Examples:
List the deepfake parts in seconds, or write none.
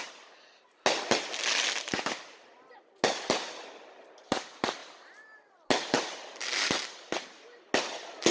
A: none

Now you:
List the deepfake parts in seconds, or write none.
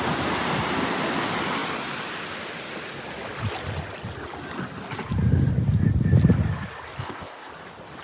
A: 7.0-7.5 (codec, ZipCodec)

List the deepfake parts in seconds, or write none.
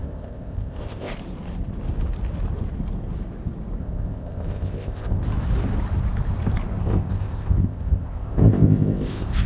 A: 0.0-1.1 (codec, ZipCodec); 3.8-5.2; 6.8-9.5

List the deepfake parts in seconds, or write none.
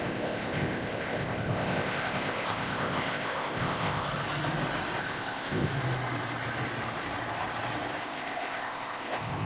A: 0.0-4.1 (codec, ZipCodec); 5.0-5.7; 8.0-9.5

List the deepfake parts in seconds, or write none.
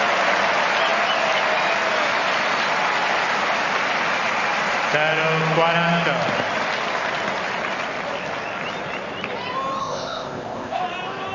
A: 9.8-10.8 (codec, ZipCodec)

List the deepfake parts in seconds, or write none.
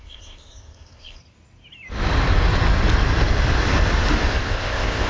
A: 0.0-1.2 (codec, ZipCodec); 4.3-5.1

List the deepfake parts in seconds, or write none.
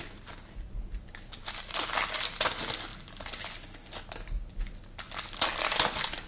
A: none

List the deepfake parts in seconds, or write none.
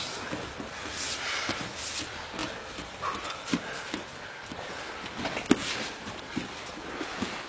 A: none